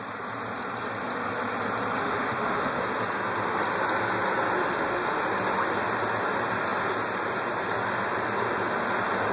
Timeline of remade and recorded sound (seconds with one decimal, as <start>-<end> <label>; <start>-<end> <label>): 0.0-2.0 recorded; 2.0-2.8 remade; 2.8-4.6 recorded; 4.6-5.2 remade; 5.2-9.3 recorded